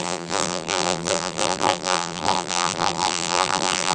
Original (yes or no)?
no